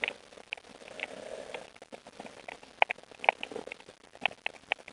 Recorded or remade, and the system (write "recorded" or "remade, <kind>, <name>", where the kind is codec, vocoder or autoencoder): recorded